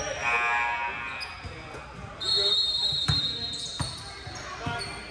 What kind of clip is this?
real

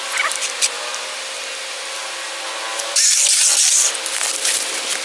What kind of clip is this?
real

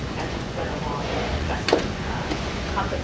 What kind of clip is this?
fake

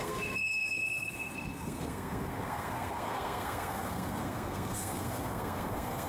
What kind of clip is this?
fake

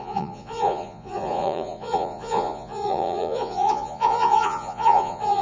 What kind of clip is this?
fake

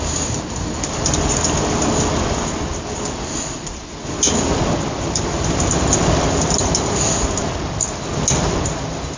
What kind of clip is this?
real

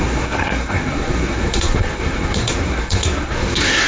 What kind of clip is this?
fake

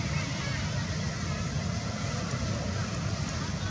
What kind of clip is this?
real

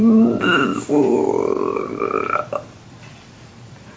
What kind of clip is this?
fake